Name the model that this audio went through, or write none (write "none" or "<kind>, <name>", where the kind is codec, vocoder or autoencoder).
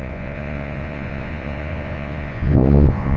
vocoder, Vocos